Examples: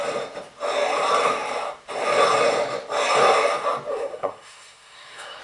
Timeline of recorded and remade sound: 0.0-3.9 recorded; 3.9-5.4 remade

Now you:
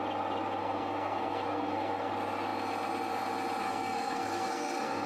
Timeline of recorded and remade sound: 0.0-0.6 recorded; 0.6-2.1 remade; 2.1-3.6 recorded; 3.6-5.1 remade

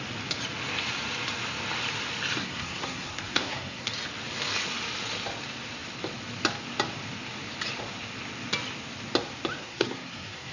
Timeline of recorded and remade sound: 0.0-2.4 recorded; 2.4-3.9 remade; 3.9-9.6 recorded; 9.6-10.5 remade

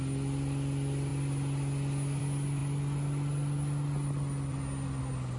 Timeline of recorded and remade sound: 0.0-5.4 recorded

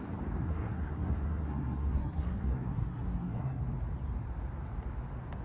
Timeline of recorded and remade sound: 0.0-0.4 recorded; 0.4-3.6 remade; 3.6-5.4 recorded

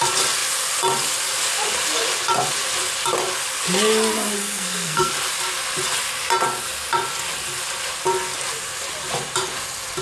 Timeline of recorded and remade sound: 0.0-4.4 recorded; 4.4-5.1 remade; 5.1-10.0 recorded